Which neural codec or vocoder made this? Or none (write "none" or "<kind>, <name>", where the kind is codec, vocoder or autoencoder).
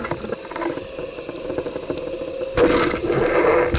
none